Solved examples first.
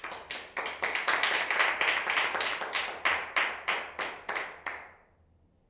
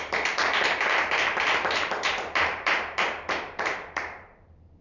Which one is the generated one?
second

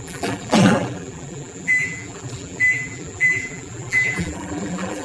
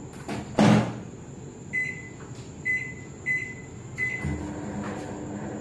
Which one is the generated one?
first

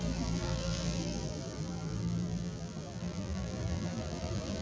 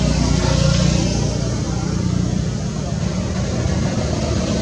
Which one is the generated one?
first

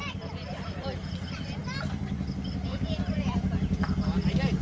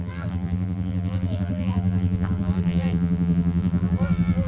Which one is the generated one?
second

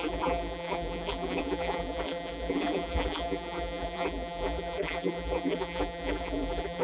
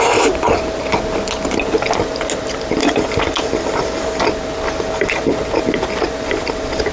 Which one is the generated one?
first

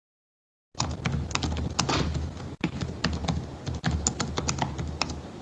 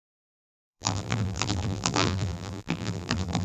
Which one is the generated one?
second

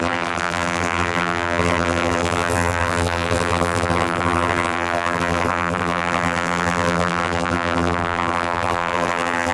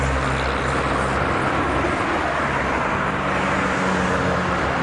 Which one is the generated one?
first